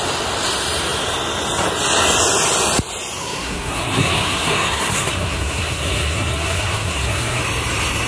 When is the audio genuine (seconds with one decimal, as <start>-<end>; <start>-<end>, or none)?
0.0-3.2; 7.4-8.1